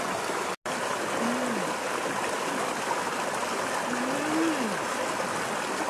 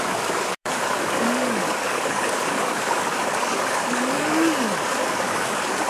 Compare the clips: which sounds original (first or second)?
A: first